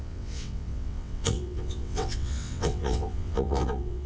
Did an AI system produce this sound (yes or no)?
yes